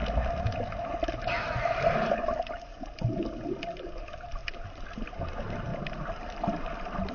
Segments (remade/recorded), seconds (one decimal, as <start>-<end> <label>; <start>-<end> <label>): 0.0-2.2 recorded; 2.2-2.7 remade; 2.7-3.8 recorded; 3.8-5.7 remade; 5.7-7.1 recorded